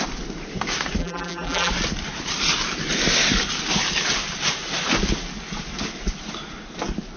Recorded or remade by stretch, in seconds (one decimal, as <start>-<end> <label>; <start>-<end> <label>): 0.0-1.0 recorded; 1.0-1.7 remade; 1.7-7.2 recorded